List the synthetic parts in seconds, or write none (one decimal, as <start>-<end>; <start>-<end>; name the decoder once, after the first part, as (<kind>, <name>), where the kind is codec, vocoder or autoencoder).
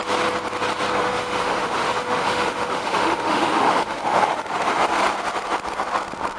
1.0-4.8 (autoencoder, DAC-VAE)